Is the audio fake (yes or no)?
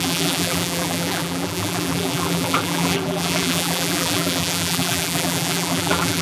yes